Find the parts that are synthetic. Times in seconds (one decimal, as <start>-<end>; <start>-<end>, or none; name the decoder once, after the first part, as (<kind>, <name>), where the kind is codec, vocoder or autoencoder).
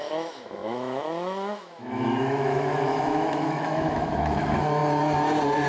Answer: 0.0-4.8 (autoencoder, DAC-VAE)